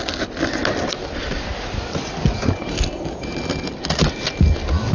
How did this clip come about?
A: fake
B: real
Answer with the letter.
B